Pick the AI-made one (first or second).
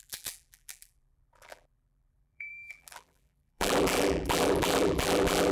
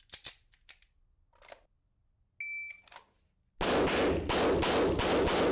first